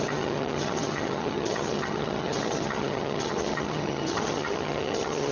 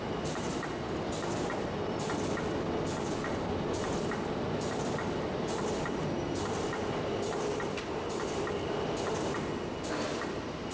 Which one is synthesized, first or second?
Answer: first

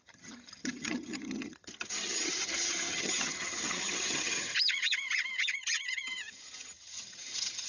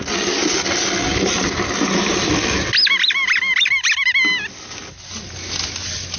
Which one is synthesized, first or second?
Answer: first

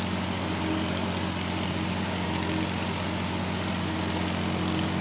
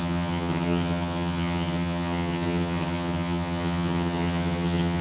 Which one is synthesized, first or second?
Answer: second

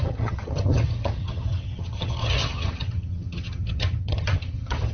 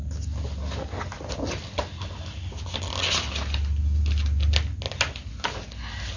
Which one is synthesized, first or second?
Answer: first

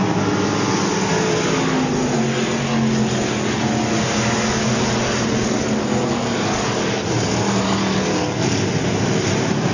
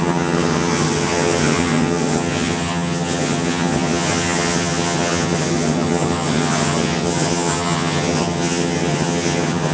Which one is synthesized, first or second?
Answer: second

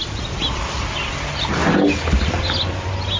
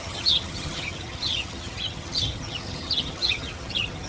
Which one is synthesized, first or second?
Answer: second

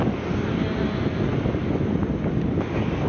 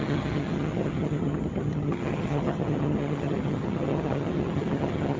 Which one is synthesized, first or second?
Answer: second